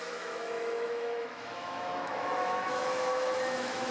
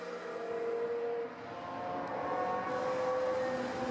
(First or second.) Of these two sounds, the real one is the second